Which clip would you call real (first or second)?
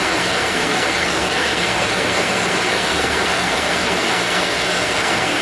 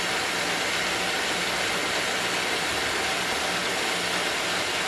second